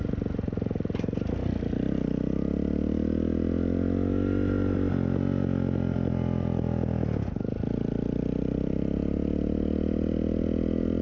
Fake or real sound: real